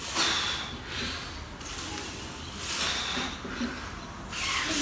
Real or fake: real